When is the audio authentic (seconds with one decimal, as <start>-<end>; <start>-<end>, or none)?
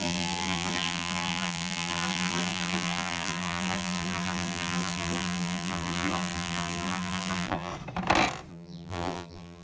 7.7-8.5